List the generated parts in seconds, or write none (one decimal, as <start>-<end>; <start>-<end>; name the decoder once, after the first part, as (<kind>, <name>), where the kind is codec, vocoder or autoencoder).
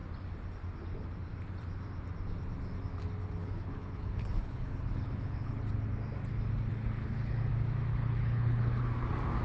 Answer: 3.4-5.6 (codec, HILCodec); 6.7-7.5; 7.9-8.8